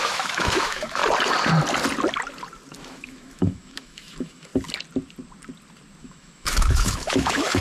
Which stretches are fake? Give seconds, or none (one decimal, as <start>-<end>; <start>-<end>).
0.0-1.0; 2.8-4.5; 6.0-7.6

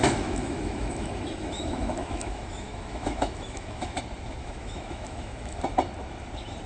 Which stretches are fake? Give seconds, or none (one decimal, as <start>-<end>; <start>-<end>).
0.0-4.0; 4.4-5.6

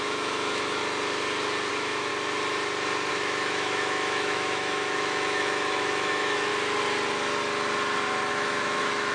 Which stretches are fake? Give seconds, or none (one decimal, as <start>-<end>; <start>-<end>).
0.0-0.8; 1.7-2.1; 3.1-6.5; 8.3-9.1